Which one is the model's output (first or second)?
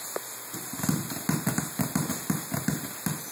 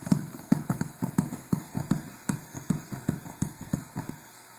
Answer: second